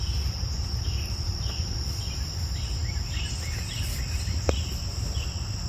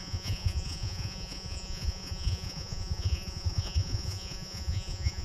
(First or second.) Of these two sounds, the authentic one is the first